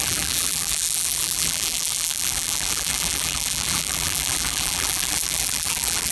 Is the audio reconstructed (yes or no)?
yes